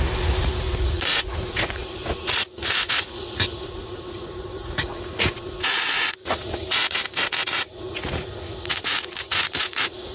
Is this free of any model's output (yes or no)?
no